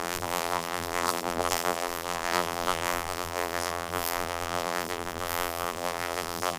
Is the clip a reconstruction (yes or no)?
yes